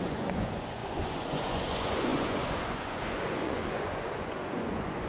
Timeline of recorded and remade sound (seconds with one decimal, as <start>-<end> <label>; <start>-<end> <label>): 0.0-5.1 remade